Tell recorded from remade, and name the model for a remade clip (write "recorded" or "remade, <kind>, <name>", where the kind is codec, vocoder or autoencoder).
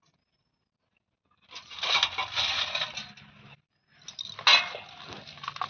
recorded